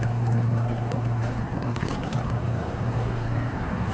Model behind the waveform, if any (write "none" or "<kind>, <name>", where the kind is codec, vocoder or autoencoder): codec, SNAC